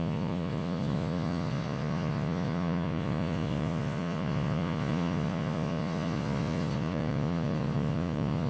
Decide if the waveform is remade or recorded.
remade